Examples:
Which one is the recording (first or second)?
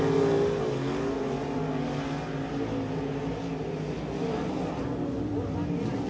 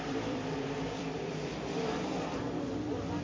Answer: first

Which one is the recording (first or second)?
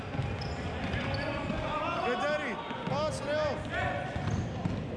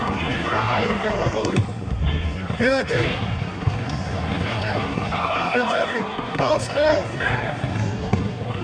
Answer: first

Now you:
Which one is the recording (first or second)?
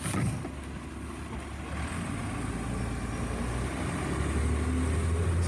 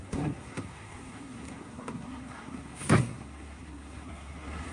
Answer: first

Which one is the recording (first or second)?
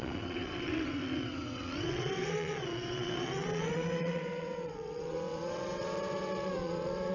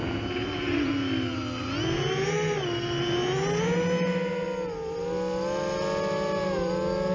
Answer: second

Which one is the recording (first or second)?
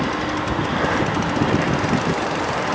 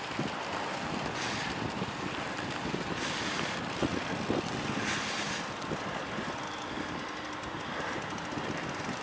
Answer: second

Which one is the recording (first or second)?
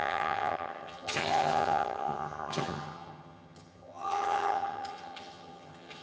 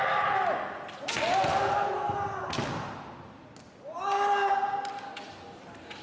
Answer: second